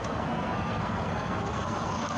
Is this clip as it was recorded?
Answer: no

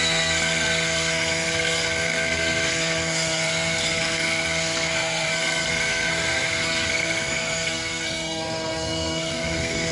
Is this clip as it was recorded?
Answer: no